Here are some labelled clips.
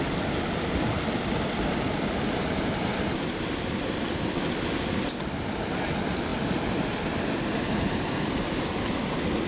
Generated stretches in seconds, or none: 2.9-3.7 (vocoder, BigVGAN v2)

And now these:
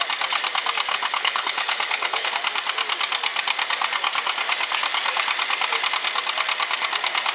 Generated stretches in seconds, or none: 0.9-2.3 (codec, HILCodec)